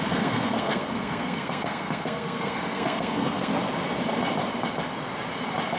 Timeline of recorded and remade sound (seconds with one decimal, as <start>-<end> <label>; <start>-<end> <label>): 0.0-3.5 remade; 3.5-5.8 recorded